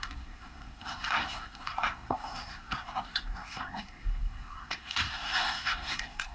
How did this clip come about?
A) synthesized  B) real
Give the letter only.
A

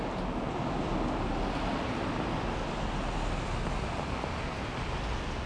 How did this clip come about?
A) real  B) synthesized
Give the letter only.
A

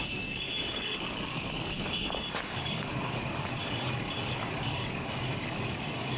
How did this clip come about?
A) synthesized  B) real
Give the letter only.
A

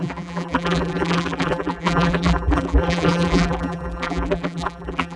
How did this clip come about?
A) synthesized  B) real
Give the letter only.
A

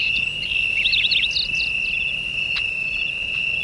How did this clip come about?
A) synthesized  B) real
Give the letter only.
B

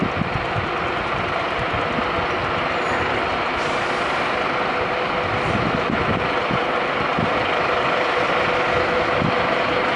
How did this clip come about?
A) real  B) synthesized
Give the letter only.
A